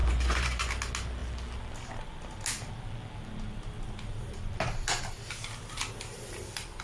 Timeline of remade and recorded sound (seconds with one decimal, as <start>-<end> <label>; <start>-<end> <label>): 0.0-0.7 remade; 0.7-6.8 recorded